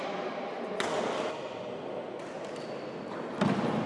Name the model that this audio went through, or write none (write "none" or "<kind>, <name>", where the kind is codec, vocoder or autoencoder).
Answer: none